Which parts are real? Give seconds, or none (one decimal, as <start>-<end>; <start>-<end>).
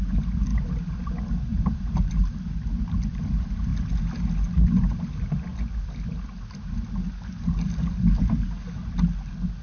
0.0-1.5; 2.1-9.6